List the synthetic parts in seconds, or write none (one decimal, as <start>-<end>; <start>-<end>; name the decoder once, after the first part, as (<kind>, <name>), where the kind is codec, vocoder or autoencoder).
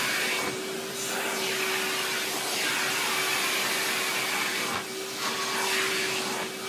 none